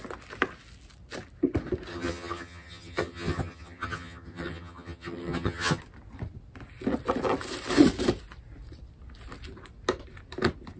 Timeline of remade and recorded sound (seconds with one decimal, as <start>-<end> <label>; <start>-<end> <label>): 0.0-1.9 recorded; 1.9-5.8 remade; 5.8-10.8 recorded